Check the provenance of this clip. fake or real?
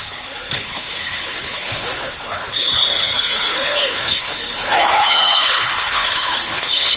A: fake